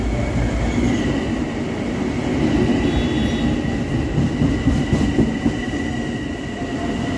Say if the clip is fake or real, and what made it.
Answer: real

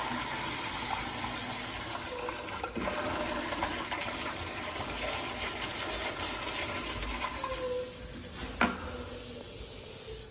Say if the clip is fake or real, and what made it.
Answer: real